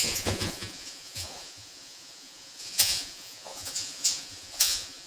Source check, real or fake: fake